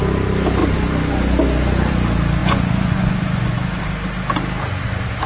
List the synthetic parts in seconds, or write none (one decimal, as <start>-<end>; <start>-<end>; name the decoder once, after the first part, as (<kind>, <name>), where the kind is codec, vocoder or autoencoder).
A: 2.4-3.8 (vocoder, Vocos)